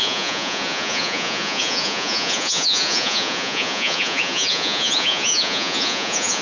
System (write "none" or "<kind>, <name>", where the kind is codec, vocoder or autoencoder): vocoder, Vocos